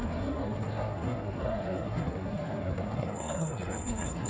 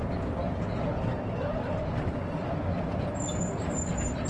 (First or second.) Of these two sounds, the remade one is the first